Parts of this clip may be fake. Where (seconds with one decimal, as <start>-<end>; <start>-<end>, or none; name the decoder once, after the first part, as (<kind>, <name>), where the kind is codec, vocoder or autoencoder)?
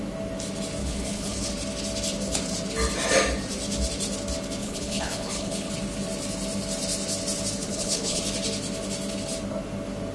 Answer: 0.8-1.5 (codec, HILCodec); 4.6-5.7; 7.7-8.2